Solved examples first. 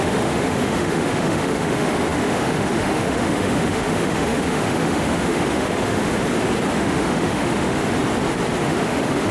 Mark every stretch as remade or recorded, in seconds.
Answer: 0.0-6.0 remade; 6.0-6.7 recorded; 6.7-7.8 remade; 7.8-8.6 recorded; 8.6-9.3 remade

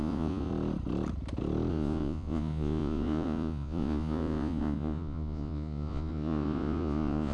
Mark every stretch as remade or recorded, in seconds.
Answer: 0.0-0.5 remade; 0.5-1.7 recorded; 1.7-7.3 remade

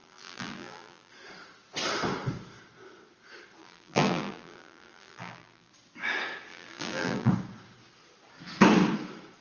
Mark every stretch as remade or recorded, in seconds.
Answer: 0.0-1.1 remade; 1.1-3.6 recorded; 3.6-5.7 remade; 5.7-6.5 recorded; 6.5-7.3 remade; 7.3-9.4 recorded